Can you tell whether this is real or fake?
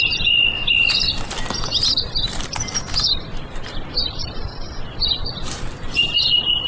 real